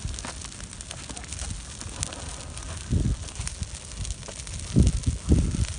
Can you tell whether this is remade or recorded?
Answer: recorded